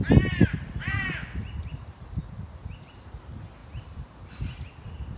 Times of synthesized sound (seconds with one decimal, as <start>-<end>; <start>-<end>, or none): 1.4-3.2; 3.6-5.2